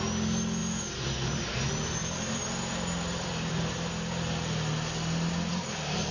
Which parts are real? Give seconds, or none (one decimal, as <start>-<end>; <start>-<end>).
0.0-0.6; 1.4-2.0; 3.7-6.1